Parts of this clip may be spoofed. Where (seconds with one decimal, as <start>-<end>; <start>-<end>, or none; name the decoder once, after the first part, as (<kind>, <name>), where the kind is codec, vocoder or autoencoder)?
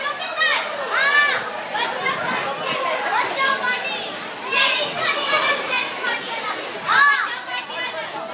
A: 1.1-1.9 (vocoder, BigVGAN v2)